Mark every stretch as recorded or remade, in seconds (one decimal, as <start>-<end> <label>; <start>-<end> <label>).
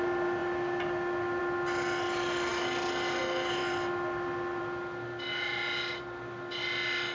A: 0.0-7.1 recorded